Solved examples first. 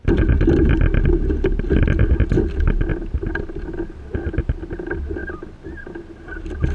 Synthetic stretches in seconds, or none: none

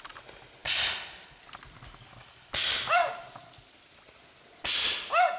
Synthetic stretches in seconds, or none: none

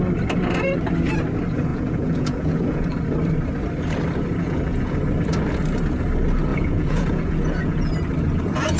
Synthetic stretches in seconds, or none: 1.7-2.9 (vocoder, Vocos); 4.4-5.0; 6.5-7.9

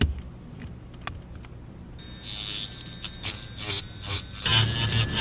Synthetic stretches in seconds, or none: none

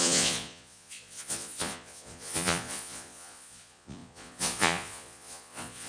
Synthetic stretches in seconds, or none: 0.0-5.9 (vocoder, Vocos)

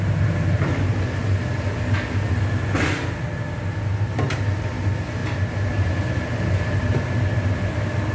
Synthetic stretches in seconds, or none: none

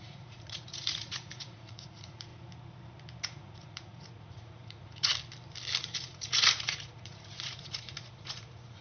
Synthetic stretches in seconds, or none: 0.0-2.3 (vocoder, Vocos); 3.2-5.1; 5.8-8.8